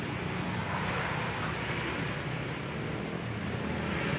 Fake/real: real